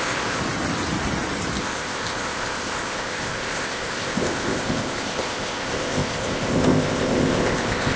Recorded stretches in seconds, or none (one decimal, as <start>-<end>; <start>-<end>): 0.4-1.6